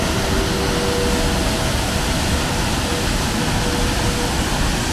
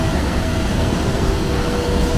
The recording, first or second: first